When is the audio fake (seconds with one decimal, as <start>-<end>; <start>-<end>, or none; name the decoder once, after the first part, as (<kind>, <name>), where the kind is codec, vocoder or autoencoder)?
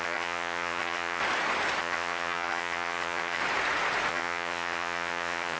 0.0-1.2 (vocoder, HiFi-GAN); 1.8-3.4; 4.1-5.6